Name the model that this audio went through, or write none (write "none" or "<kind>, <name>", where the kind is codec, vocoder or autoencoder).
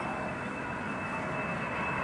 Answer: none